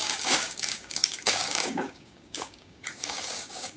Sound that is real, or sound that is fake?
fake